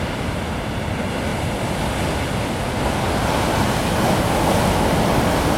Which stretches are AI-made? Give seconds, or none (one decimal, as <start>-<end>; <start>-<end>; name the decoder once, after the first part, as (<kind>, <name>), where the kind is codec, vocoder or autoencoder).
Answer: none